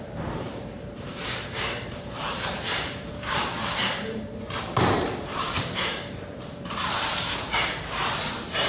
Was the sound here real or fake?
fake